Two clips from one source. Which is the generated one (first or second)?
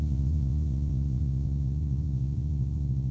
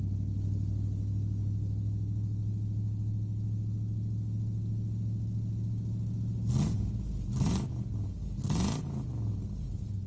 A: first